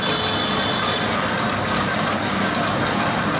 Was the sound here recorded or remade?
recorded